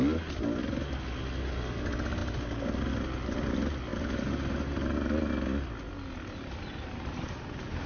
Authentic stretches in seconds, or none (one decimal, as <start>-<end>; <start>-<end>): 0.0-7.9